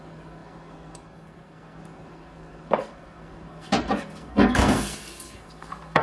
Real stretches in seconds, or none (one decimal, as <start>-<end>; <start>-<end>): none